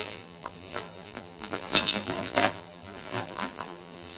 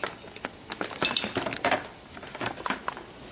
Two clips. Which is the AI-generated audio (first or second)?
first